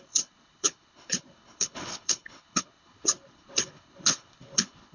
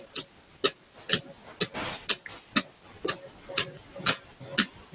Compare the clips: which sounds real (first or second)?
second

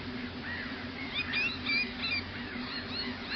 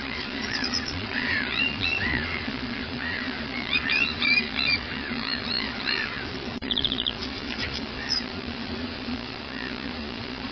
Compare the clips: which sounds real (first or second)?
first